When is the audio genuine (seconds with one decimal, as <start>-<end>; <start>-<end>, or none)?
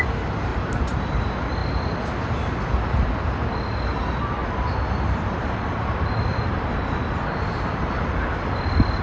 0.0-0.5; 1.0-4.4; 7.0-9.0